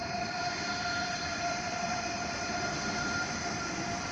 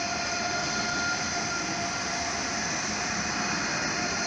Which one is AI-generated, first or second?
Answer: first